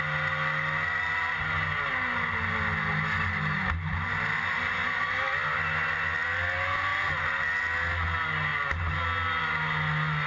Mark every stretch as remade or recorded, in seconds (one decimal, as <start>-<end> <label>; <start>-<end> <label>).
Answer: 0.0-6.9 recorded; 6.9-7.5 remade; 7.5-10.3 recorded